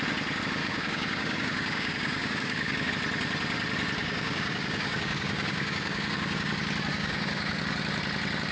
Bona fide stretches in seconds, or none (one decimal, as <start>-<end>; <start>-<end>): 0.0-0.6; 2.9-4.0; 6.5-6.9; 7.6-8.5

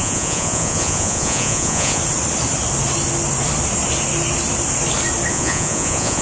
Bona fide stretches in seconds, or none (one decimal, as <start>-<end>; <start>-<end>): 2.0-5.3

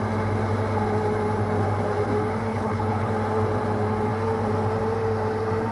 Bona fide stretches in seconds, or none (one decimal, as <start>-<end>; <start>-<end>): 0.0-2.5; 3.1-5.7

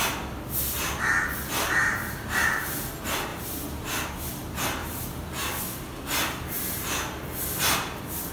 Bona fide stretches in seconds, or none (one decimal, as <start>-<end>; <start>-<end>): 0.0-1.8; 2.9-3.3; 4.3-4.8; 5.6-8.3